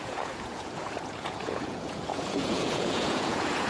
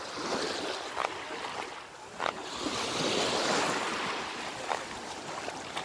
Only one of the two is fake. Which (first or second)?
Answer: first